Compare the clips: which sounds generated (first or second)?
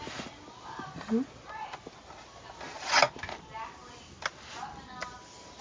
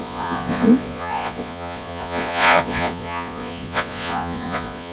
second